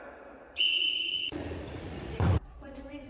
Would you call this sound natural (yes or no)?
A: no